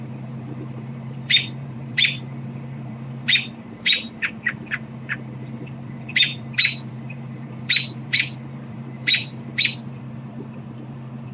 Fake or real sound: fake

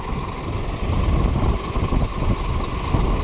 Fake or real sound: real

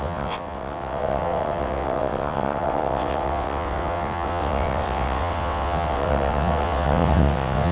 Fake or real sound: fake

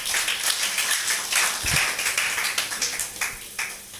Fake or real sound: real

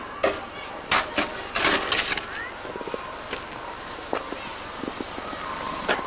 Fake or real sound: real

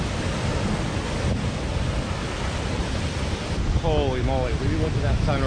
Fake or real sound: real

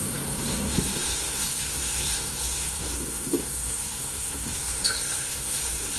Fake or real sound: fake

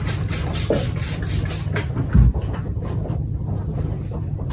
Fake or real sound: real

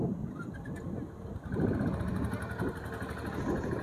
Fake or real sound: real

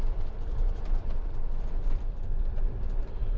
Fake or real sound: fake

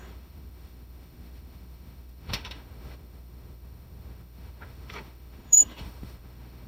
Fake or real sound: fake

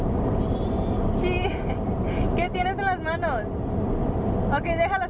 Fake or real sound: real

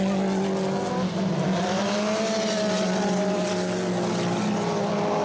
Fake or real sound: real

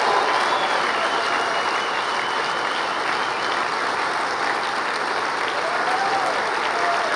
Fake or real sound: real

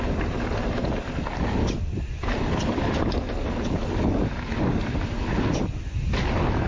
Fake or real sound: real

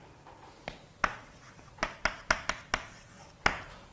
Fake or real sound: real